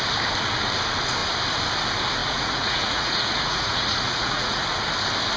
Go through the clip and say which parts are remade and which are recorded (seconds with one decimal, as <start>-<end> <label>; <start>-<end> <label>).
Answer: 0.0-2.2 recorded; 2.2-4.6 remade; 4.6-5.4 recorded